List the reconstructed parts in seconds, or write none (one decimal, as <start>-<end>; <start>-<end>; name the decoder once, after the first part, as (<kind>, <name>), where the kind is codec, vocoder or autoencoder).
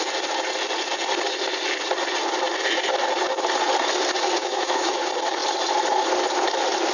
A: 4.4-5.0 (autoencoder, DAC-VAE)